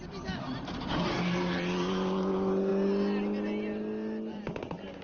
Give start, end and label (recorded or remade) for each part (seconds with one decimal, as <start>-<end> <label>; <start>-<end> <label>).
0.0-5.0 recorded